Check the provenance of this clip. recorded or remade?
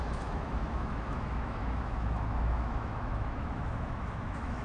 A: remade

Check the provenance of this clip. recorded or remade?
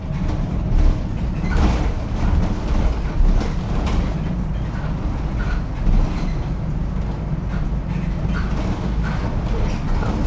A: recorded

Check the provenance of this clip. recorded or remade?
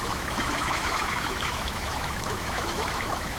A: remade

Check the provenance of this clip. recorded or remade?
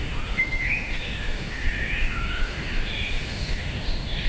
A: remade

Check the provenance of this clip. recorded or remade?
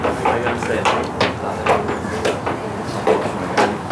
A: recorded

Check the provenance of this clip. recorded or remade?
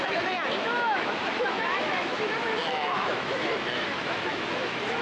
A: remade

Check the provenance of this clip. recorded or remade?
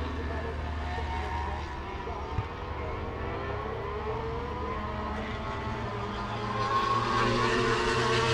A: recorded